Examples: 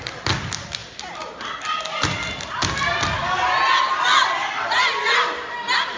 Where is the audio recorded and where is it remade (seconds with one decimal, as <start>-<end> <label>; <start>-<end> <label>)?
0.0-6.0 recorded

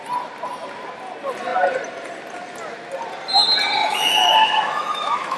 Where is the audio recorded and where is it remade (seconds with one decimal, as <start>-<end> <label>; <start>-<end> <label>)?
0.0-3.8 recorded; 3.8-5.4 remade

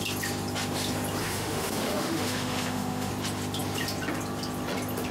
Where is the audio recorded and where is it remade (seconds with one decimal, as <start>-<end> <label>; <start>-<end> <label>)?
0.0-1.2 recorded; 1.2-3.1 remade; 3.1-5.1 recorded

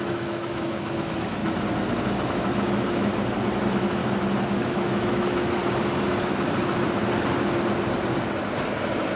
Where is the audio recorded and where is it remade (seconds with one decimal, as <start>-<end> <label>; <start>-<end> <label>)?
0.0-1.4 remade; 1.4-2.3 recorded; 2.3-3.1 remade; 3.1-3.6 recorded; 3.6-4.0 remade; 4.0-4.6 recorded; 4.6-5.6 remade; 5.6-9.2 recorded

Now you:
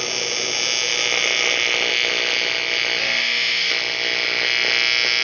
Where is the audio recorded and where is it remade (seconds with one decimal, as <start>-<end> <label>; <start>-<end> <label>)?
0.0-3.0 recorded; 3.0-3.7 remade; 3.7-5.2 recorded